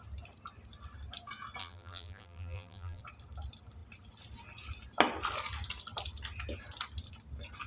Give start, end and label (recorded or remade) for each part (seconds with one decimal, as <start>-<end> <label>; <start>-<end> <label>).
0.0-1.6 recorded; 1.6-3.0 remade; 3.0-7.7 recorded